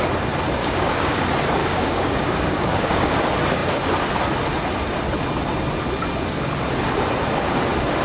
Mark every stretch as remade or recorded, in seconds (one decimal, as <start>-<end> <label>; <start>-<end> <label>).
0.0-0.6 recorded; 0.6-1.2 remade; 1.2-1.6 recorded; 1.6-3.2 remade; 3.2-8.0 recorded